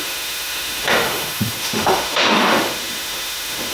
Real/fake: fake